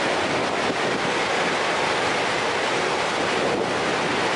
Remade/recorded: recorded